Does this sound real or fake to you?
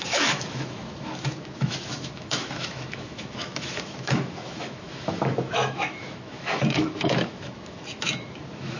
fake